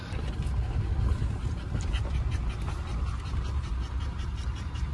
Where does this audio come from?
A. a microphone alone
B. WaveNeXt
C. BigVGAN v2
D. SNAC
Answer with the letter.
A